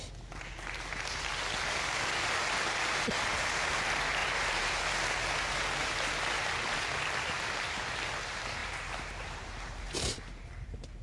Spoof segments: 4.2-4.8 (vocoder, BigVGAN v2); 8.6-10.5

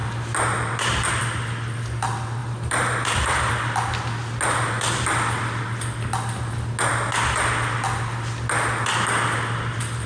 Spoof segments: 2.4-3.5 (vocoder, BigVGAN v2)

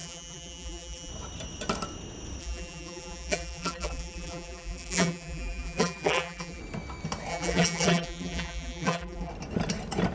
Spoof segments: 0.0-1.1 (vocoder, BigVGAN v2); 2.4-6.6; 7.3-9.3

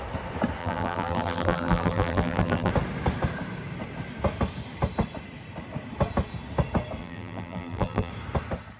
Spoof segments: 0.6-2.7 (vocoder, BigVGAN v2); 7.0-8.1

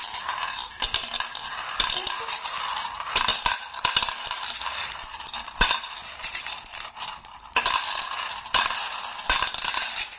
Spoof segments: 3.3-3.9 (vocoder, BigVGAN v2); 6.0-8.1

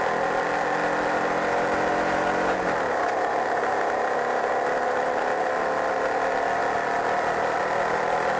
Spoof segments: 6.6-7.6 (vocoder, BigVGAN v2)

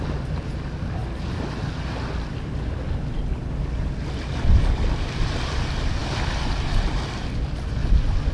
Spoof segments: none

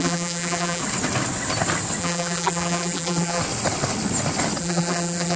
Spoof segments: 0.0-0.8 (vocoder, BigVGAN v2); 2.0-3.4; 4.6-5.4